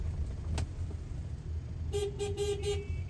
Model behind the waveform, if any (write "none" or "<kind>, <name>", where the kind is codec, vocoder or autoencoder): none